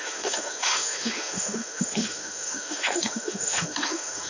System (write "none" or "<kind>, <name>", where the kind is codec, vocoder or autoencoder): autoencoder, DAC-VAE